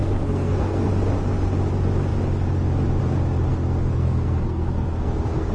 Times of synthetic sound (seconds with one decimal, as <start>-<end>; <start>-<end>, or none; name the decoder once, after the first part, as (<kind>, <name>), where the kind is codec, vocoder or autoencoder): 0.0-0.9 (codec, SNAC); 3.5-5.5